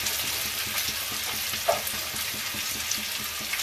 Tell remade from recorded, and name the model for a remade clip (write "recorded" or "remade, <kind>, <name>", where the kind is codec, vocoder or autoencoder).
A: recorded